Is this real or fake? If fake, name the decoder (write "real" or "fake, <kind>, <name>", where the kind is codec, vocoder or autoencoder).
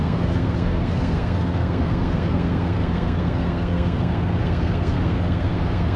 fake, codec, SNAC